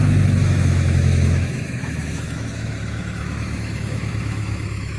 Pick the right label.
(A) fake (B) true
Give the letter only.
A